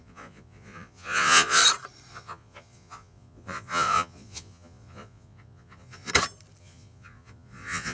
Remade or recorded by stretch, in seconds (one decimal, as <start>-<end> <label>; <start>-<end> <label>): 0.0-1.6 remade; 1.6-2.1 recorded; 2.1-6.1 remade; 6.1-6.6 recorded; 6.6-7.9 remade